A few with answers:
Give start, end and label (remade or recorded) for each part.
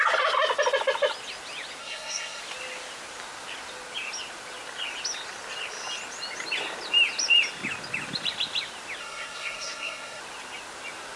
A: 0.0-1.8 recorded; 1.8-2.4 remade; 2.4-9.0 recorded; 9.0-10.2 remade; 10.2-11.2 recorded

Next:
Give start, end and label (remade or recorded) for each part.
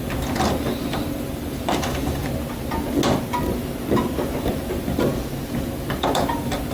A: 0.0-2.2 remade; 2.2-4.4 recorded; 4.4-5.1 remade; 5.1-5.9 recorded; 5.9-6.7 remade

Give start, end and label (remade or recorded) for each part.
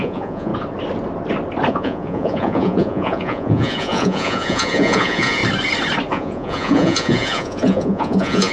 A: 0.0-0.5 remade; 0.5-1.7 recorded; 1.7-5.4 remade; 5.4-6.1 recorded; 6.1-8.5 remade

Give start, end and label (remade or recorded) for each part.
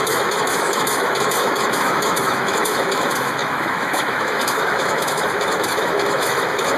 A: 0.0-6.8 remade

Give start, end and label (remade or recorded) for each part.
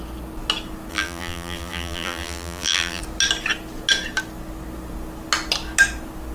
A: 0.0-0.9 recorded; 0.9-3.0 remade; 3.0-6.3 recorded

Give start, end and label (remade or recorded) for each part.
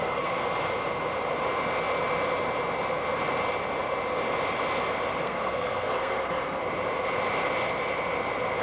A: 0.0-0.4 remade; 0.4-5.2 recorded; 5.2-6.6 remade; 6.6-8.6 recorded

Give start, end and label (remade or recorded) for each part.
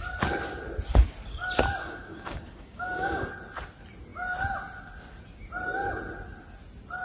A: 0.0-1.8 recorded; 1.8-3.3 remade; 3.3-7.0 recorded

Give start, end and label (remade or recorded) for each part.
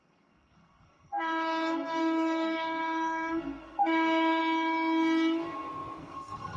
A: 0.0-4.4 remade; 4.4-6.0 recorded; 6.0-6.6 remade